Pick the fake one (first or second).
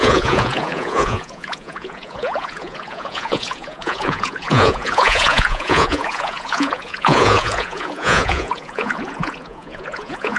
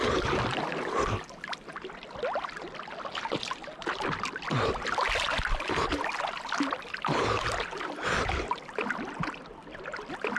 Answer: first